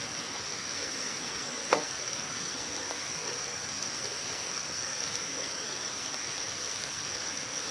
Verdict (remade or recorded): remade